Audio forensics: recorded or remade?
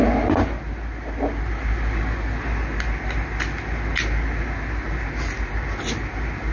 recorded